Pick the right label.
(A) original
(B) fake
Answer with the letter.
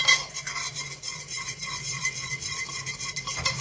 A